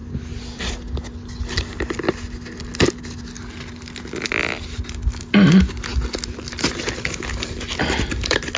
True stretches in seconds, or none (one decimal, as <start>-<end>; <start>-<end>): 0.0-8.6